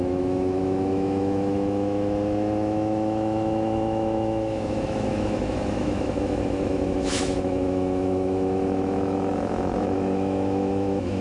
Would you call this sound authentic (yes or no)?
no